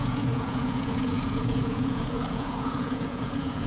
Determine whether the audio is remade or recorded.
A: remade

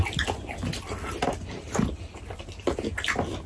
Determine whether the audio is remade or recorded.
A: recorded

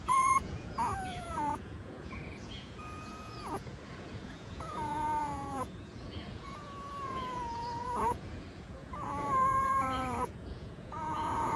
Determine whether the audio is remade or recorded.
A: remade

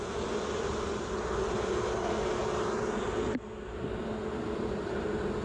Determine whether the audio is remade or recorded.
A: recorded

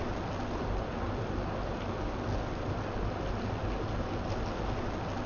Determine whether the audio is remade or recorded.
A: recorded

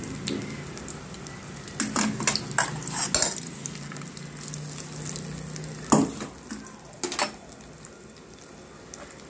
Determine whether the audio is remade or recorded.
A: recorded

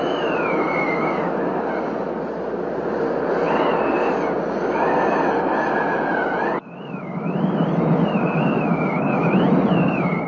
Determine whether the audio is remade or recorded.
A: recorded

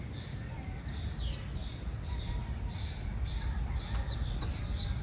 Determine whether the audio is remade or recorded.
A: recorded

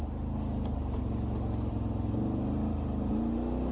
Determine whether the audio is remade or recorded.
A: recorded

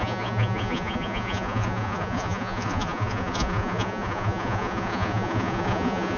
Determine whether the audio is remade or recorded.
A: remade